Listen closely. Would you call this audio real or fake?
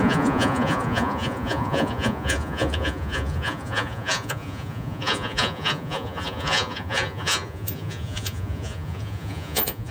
fake